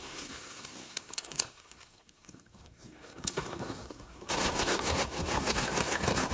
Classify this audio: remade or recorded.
remade